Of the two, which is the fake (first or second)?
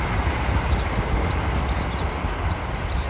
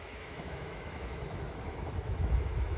second